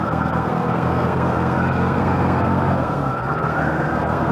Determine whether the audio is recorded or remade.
remade